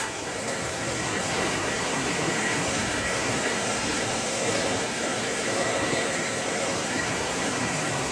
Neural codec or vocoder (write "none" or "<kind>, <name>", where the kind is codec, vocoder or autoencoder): codec, SNAC